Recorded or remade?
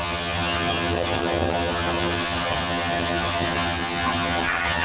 remade